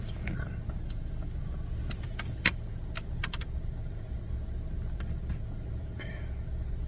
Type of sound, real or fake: fake